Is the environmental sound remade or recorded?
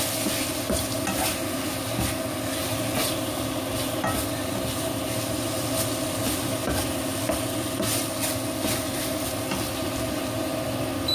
recorded